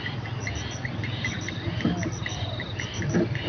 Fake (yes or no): no